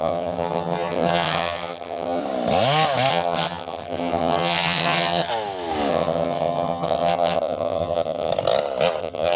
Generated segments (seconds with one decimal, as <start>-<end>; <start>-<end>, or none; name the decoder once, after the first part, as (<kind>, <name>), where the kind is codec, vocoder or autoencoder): 0.0-2.2 (vocoder, HiFi-GAN); 3.1-5.3; 5.9-8.3; 9.0-9.4